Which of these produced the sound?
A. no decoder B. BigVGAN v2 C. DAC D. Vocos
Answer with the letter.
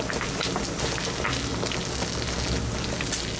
A